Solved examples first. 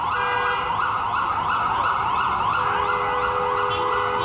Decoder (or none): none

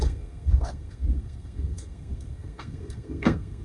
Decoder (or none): codec, SNAC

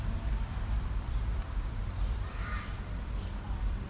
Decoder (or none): vocoder, BigVGAN v2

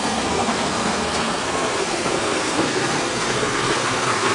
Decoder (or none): codec, SNAC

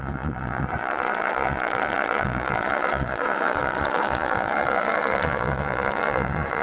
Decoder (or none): vocoder, Vocos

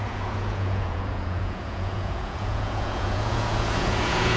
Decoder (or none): vocoder, Vocos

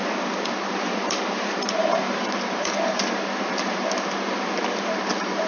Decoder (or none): vocoder, BigVGAN v2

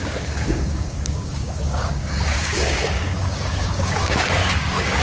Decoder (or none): codec, DAC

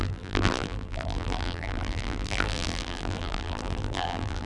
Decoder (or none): vocoder, BigVGAN v2